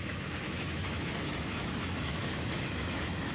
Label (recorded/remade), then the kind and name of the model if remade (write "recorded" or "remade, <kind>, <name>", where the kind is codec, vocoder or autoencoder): remade, autoencoder, DAC-VAE